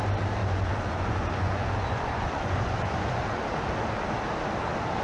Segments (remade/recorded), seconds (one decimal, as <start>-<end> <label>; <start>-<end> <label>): 0.0-0.4 recorded; 0.4-3.4 remade; 3.4-5.0 recorded